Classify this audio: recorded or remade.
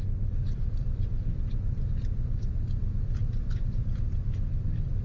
recorded